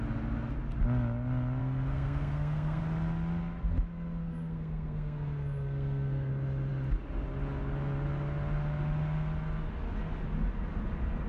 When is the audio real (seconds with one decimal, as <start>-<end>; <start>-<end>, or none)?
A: 0.0-1.6; 2.8-4.2; 6.3-11.3